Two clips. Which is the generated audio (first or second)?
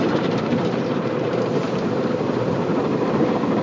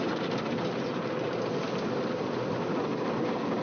first